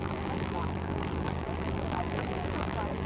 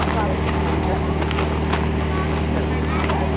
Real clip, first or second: second